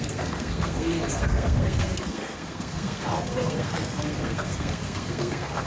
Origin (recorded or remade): remade